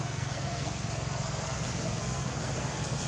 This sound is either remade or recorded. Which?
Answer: remade